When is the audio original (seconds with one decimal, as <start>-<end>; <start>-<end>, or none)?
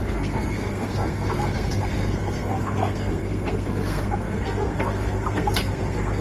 none